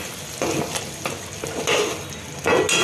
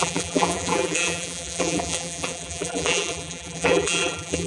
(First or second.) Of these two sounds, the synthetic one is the second